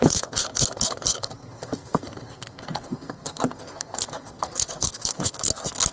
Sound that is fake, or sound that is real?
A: fake